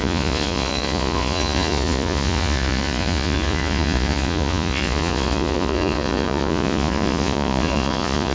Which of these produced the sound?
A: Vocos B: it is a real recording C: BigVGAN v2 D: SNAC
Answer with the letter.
A